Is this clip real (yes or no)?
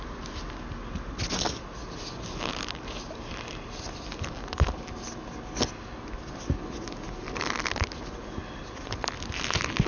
yes